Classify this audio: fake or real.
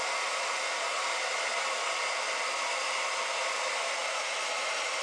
real